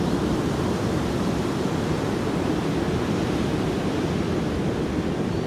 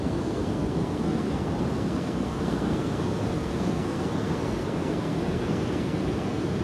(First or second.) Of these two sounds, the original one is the first